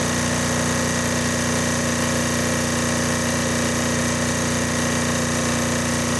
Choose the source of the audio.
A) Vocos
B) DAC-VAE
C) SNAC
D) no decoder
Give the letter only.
D